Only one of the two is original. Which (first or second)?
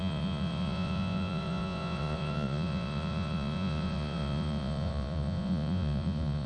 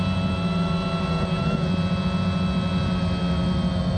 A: second